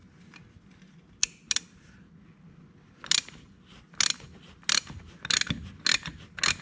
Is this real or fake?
real